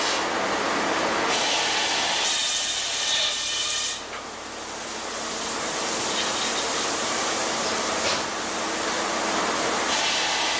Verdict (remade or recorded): recorded